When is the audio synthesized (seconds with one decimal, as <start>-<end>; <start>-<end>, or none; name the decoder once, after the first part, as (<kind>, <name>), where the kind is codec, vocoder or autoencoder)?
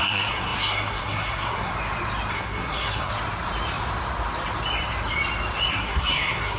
0.0-1.7 (codec, SNAC); 2.3-3.1; 5.7-6.6